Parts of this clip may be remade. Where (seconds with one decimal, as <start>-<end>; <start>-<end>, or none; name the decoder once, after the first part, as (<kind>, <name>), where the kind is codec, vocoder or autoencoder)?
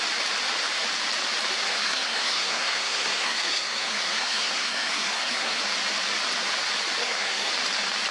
1.7-5.6 (codec, SNAC); 7.0-7.5